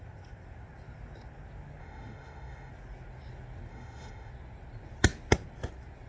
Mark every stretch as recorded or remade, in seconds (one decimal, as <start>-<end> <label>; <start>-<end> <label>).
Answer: 0.0-1.8 recorded; 1.8-2.7 remade; 2.7-3.7 recorded; 3.7-4.3 remade; 4.3-6.1 recorded